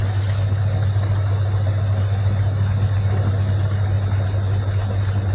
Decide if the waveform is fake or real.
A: real